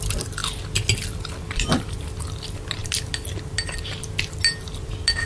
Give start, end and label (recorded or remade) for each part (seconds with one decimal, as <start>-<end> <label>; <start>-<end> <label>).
0.0-5.3 recorded